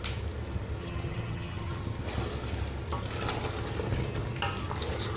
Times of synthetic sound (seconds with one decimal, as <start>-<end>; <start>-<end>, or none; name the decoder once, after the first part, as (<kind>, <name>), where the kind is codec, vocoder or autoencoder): 0.8-1.8 (vocoder, HiFi-GAN)

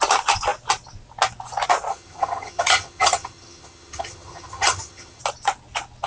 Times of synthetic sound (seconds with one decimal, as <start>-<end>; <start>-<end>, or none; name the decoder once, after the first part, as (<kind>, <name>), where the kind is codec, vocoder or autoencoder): 1.9-5.2 (vocoder, HiFi-GAN)

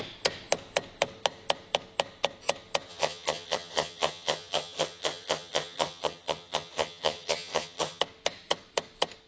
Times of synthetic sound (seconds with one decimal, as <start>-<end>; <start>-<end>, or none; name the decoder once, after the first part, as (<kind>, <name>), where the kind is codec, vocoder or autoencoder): 2.9-8.0 (vocoder, HiFi-GAN)

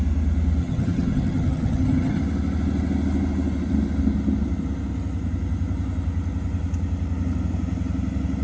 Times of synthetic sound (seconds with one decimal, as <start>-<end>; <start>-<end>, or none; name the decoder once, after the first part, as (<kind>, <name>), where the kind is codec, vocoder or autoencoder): 0.6-2.2 (vocoder, HiFi-GAN)

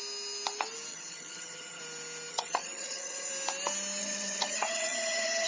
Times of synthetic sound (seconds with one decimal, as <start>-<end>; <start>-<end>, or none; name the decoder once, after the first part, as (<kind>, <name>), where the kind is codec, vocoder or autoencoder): 0.9-1.8 (vocoder, HiFi-GAN); 2.3-3.3; 4.0-5.5

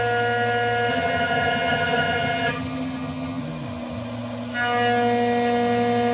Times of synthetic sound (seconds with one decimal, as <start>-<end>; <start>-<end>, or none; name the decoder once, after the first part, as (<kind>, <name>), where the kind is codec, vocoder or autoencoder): 0.9-3.4 (vocoder, HiFi-GAN)

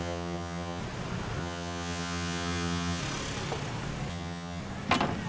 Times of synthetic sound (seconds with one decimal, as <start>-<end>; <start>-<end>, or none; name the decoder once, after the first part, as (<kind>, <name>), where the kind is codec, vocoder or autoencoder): 0.0-0.8 (vocoder, HiFi-GAN); 1.4-3.0; 4.1-4.6